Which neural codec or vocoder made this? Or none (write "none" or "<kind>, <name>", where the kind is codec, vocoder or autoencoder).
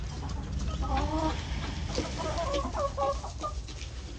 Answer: none